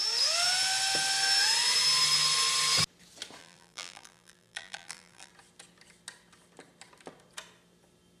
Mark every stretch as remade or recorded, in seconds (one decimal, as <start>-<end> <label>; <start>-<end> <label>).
0.0-3.4 recorded; 3.4-5.3 remade; 5.3-8.2 recorded